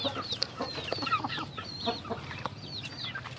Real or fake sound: real